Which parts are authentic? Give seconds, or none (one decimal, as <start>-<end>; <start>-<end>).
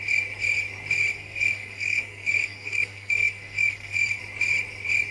0.0-1.1; 4.2-5.1